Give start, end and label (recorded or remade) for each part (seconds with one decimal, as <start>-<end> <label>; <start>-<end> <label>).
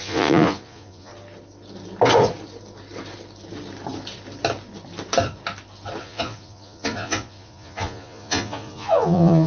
0.0-1.1 remade; 1.1-6.0 recorded; 6.0-9.5 remade